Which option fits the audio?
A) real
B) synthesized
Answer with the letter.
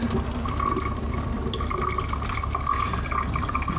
A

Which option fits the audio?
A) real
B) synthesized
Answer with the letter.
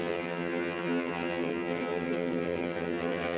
B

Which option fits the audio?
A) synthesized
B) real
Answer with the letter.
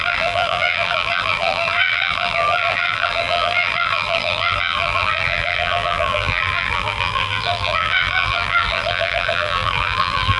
A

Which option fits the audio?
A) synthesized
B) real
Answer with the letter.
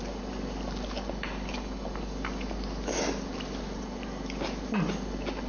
B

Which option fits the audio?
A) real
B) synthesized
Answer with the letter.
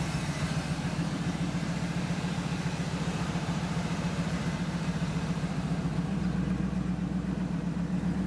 B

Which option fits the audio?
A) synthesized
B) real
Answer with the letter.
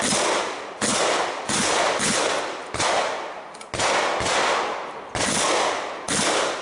B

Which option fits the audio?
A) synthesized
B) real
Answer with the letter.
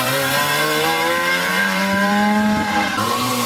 A